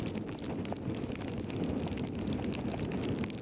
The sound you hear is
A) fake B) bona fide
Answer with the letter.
B